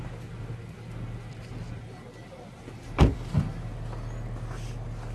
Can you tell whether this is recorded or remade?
recorded